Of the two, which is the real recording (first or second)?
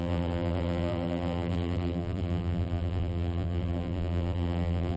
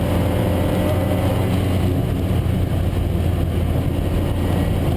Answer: second